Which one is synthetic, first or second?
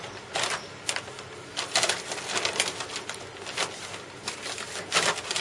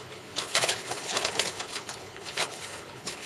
second